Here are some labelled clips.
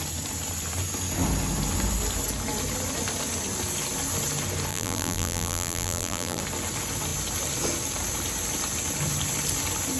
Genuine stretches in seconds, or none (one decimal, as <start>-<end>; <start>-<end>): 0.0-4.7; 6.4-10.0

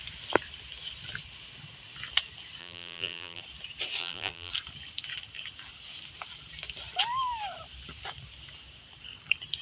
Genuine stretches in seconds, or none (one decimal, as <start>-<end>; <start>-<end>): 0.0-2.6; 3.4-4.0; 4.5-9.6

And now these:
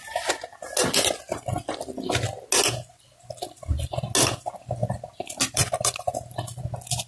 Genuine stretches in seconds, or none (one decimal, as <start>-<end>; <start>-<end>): 0.0-4.8; 6.6-7.1

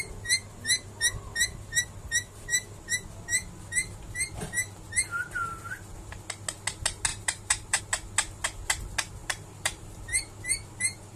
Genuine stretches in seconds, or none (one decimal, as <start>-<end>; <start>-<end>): 0.0-7.1; 7.8-9.2; 10.0-11.2